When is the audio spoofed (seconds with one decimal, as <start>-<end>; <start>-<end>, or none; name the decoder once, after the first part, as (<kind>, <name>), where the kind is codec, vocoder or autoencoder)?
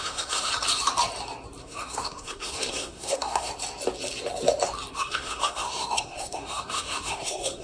0.0-0.5 (codec, SNAC); 1.6-3.5; 4.9-7.6